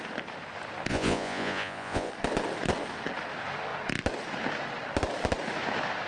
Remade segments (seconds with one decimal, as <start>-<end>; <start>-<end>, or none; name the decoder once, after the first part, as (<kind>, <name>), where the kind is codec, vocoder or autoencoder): 0.9-2.1 (vocoder, Vocos)